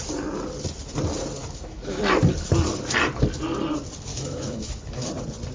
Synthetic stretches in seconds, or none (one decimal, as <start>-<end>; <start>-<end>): 1.4-2.0; 4.1-5.1